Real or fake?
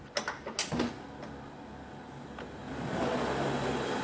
real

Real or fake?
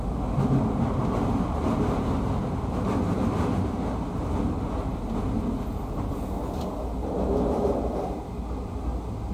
real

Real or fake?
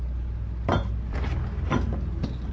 real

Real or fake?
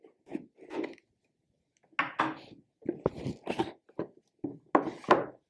real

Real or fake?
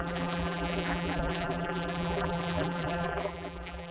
fake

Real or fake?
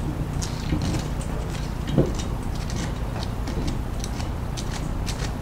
real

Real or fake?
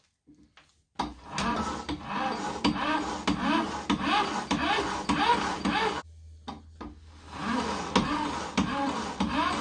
real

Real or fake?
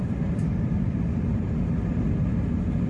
fake